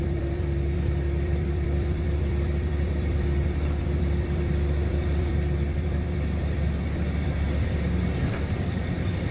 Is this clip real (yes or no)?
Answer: no